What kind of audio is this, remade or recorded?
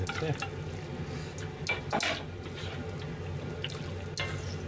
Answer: recorded